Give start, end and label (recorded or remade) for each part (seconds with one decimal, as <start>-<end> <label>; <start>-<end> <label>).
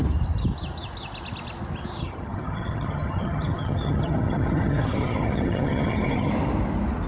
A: 0.0-2.0 recorded; 2.0-6.3 remade; 6.3-7.1 recorded